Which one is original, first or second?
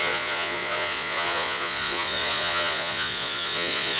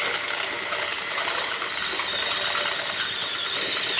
second